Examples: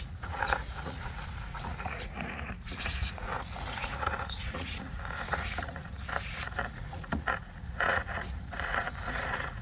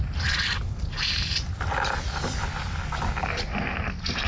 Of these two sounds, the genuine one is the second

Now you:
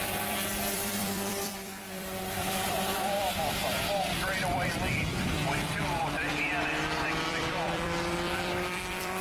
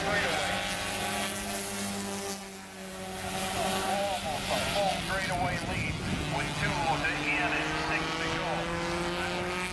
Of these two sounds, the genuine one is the second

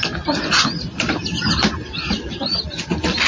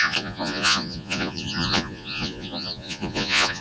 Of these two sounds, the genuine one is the first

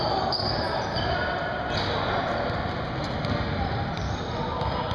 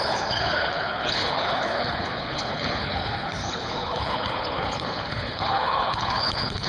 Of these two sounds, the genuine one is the first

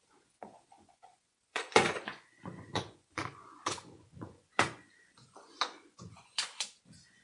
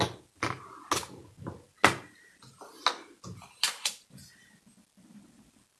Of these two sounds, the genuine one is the second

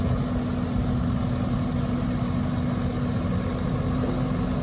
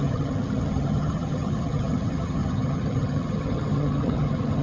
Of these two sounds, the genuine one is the first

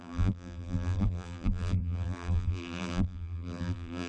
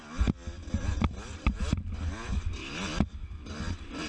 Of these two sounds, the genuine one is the second